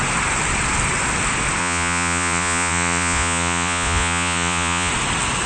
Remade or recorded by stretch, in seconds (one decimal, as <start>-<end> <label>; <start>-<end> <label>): 0.0-1.6 recorded; 1.6-4.9 remade; 4.9-5.5 recorded